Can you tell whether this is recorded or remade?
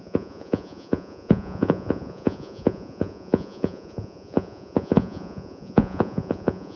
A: remade